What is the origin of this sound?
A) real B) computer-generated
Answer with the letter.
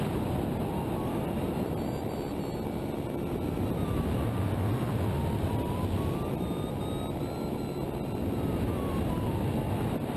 A